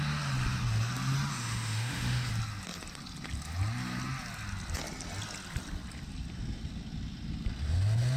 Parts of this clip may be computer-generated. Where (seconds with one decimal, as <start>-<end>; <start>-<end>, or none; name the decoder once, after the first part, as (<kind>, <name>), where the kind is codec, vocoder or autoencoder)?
1.3-2.3 (autoencoder, DAC-VAE)